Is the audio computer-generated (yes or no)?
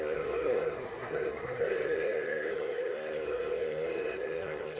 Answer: yes